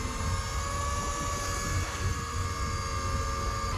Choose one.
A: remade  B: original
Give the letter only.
B